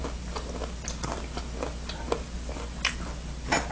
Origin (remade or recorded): recorded